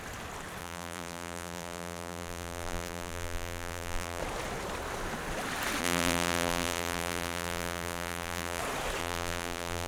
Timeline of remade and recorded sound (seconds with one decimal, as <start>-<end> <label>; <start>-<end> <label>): 0.0-0.6 recorded; 0.6-4.2 remade; 4.2-5.8 recorded; 5.8-8.6 remade; 8.6-9.0 recorded; 9.0-9.9 remade

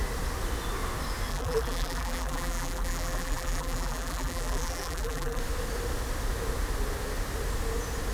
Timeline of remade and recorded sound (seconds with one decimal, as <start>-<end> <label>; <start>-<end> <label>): 0.0-1.3 recorded; 1.3-5.4 remade; 5.4-8.1 recorded

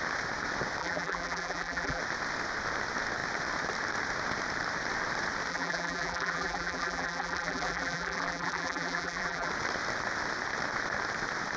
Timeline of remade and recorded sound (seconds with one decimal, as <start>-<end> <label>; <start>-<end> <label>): 0.0-0.8 recorded; 0.8-2.0 remade; 2.0-5.5 recorded; 5.5-9.5 remade; 9.5-11.6 recorded

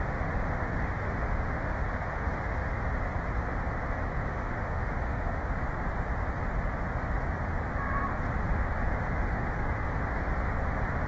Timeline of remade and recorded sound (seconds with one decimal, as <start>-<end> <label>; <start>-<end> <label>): 0.0-0.6 recorded; 0.6-2.8 remade; 2.8-4.2 recorded; 4.2-5.5 remade; 5.5-8.4 recorded; 8.4-10.3 remade; 10.3-11.1 recorded

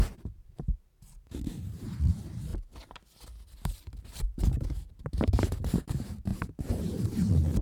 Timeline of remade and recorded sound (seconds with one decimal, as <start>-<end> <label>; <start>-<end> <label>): 0.0-2.5 remade; 2.5-4.5 recorded; 4.5-7.6 remade

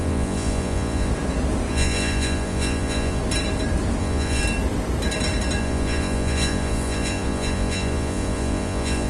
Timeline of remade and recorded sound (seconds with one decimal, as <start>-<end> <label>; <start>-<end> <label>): 0.0-1.1 remade; 1.1-1.7 recorded; 1.7-3.2 remade; 3.2-4.0 recorded; 4.0-4.4 remade; 4.4-5.6 recorded; 5.6-9.1 remade